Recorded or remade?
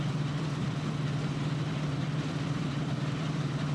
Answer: remade